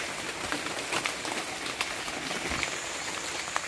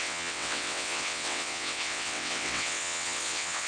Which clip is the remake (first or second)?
second